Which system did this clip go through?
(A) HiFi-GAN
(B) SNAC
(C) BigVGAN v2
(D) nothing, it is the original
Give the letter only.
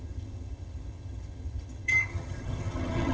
A